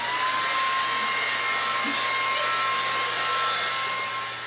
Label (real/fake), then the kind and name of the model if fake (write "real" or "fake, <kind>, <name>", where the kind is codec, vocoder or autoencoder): real